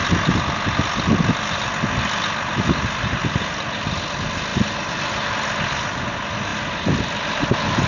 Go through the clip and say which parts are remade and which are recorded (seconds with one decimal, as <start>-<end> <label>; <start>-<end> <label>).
0.0-7.9 recorded